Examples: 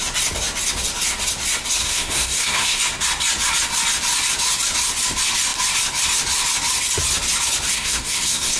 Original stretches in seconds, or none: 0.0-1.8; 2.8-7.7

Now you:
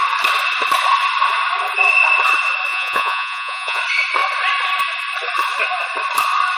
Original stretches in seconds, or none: 0.0-2.7; 3.8-6.6

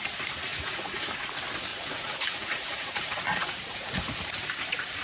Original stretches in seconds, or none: 0.0-0.5; 1.1-1.7; 3.6-5.0

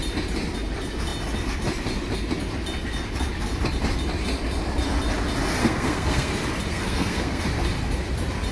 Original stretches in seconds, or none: 0.0-5.6; 6.3-6.7; 7.4-8.5

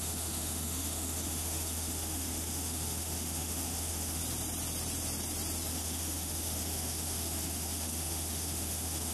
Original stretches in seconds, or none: 4.2-5.7

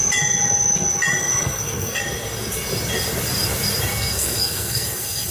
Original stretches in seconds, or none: 0.0-1.2; 2.0-3.9

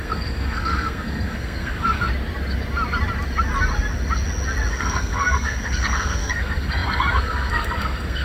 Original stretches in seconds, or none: 2.1-4.7

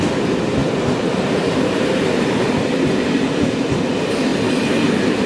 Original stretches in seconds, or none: 0.0-0.6; 3.8-5.3